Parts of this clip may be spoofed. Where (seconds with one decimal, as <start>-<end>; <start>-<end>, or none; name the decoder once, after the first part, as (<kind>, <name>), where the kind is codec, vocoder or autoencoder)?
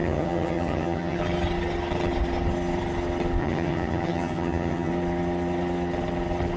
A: 0.0-1.2 (vocoder, HiFi-GAN); 3.4-4.9